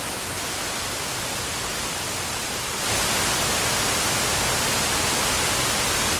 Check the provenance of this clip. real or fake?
real